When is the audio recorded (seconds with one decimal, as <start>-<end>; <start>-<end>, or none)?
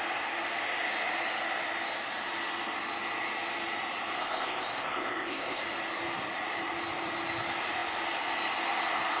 0.0-4.2; 5.6-9.2